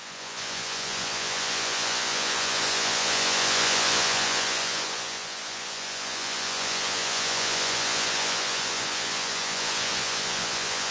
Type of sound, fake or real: fake